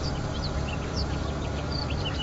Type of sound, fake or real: real